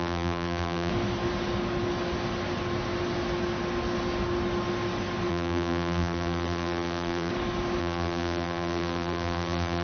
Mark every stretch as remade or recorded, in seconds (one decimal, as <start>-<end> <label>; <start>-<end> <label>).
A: 0.0-0.9 remade; 0.9-5.3 recorded; 5.3-7.3 remade; 7.3-7.8 recorded; 7.8-9.8 remade